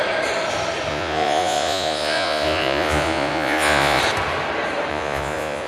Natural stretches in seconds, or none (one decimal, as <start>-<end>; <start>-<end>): 0.0-0.9; 4.0-4.9